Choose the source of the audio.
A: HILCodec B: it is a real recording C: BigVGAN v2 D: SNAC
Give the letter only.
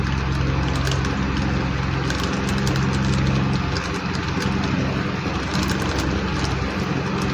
B